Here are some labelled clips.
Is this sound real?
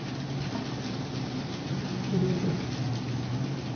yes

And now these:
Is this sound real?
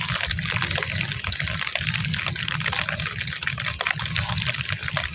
yes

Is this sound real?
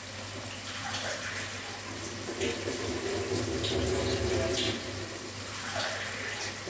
yes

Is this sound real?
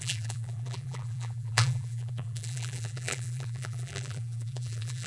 no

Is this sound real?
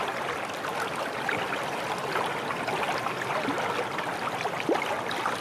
yes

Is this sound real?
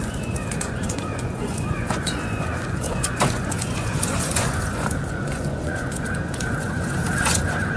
no